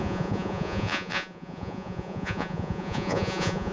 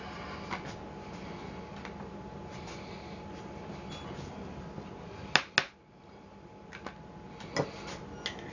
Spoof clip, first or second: first